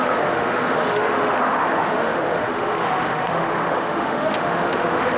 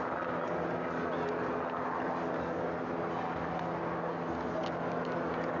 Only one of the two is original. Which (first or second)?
second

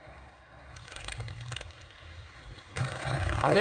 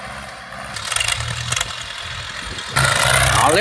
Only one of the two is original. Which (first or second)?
second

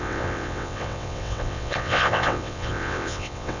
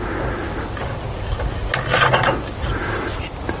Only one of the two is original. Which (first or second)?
second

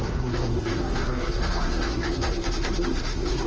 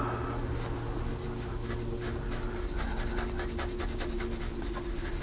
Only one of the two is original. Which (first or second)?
second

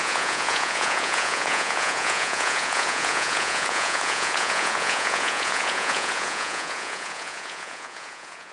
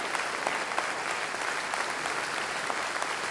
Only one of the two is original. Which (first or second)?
second